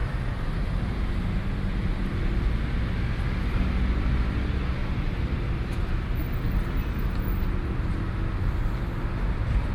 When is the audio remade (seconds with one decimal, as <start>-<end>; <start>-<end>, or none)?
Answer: 4.8-7.2